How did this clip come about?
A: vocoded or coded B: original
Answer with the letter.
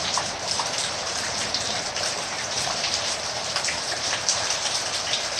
A